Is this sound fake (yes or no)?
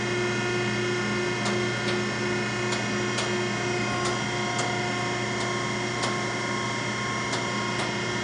no